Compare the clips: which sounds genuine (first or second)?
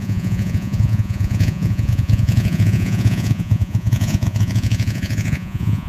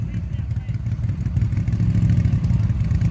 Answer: second